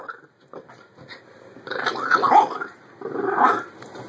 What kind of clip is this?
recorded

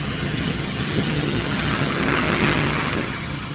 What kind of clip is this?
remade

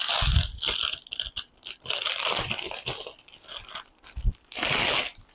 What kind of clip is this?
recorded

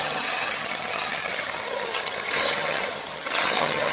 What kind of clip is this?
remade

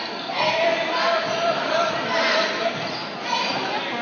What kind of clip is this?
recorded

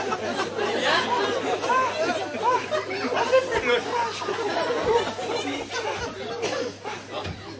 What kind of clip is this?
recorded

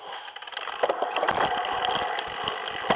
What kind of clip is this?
recorded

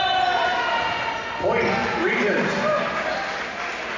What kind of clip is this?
recorded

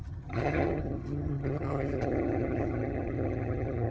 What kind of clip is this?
remade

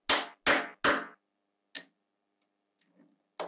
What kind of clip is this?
recorded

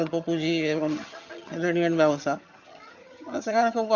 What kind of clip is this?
remade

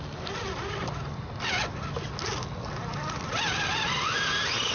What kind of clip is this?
recorded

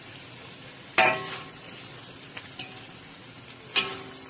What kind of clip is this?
recorded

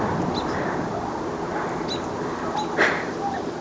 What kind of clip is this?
recorded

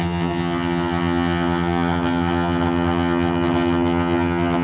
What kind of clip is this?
remade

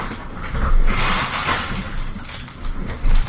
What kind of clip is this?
recorded